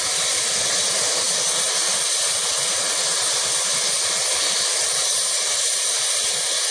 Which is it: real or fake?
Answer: real